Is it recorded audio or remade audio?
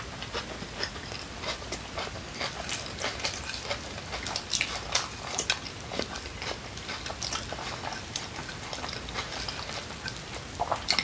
recorded